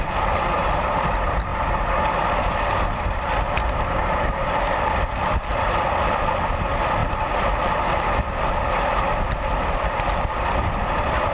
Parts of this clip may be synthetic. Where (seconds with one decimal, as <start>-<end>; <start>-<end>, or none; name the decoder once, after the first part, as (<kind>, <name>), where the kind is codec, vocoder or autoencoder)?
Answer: 0.0-11.3 (vocoder, BigVGAN v2)